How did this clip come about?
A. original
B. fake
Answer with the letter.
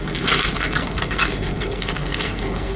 B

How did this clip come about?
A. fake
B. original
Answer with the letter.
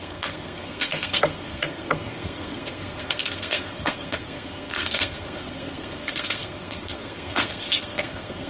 A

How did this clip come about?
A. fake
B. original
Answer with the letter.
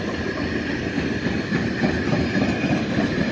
B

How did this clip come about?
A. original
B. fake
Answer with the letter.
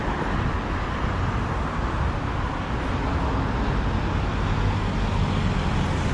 A